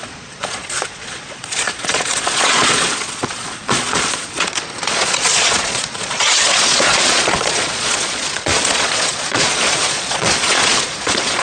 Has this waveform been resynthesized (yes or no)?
yes